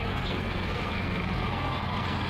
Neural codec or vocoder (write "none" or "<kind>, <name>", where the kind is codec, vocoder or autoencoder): codec, SNAC